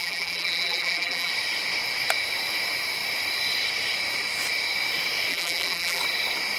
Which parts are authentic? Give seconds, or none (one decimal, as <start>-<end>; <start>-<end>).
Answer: 1.3-5.3; 6.0-6.6